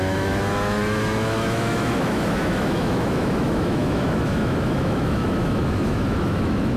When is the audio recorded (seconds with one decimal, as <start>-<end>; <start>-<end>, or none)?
none